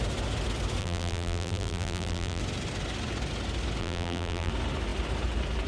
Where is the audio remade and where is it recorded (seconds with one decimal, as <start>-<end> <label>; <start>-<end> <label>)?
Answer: 0.0-0.8 recorded; 0.8-2.4 remade; 2.4-3.8 recorded; 3.8-4.5 remade; 4.5-5.7 recorded